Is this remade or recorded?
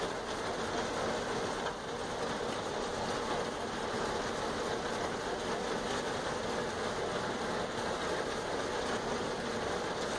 recorded